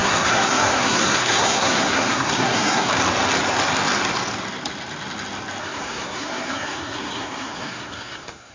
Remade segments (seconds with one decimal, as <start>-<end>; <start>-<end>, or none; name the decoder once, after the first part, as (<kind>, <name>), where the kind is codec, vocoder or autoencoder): 0.0-2.9 (codec, SNAC); 5.6-8.5